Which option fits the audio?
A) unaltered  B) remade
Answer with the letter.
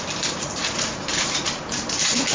B